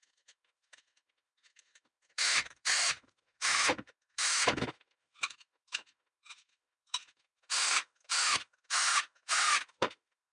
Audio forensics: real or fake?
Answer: fake